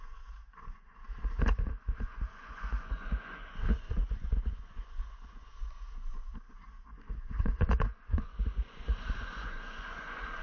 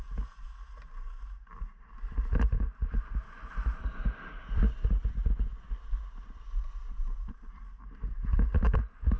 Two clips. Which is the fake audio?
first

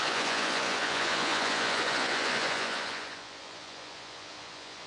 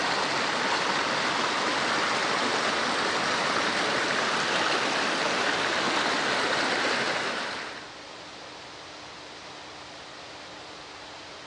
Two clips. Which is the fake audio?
first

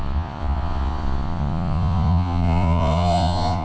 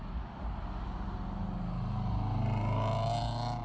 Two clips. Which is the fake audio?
first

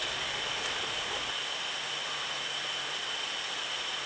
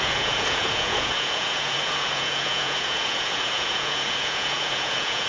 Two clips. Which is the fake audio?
second